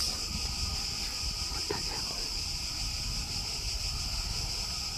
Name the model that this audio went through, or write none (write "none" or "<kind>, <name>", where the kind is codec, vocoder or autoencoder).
none